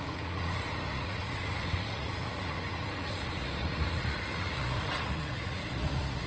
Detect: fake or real fake